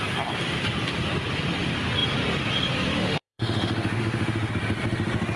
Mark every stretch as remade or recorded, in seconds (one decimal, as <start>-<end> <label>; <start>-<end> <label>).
0.0-2.9 recorded; 2.9-4.5 remade; 4.5-5.4 recorded